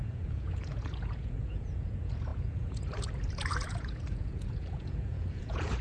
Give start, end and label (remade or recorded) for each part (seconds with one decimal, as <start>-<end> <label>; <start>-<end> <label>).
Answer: 0.0-5.8 remade